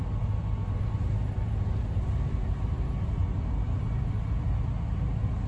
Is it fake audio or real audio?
real